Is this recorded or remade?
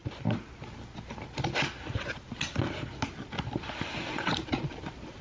recorded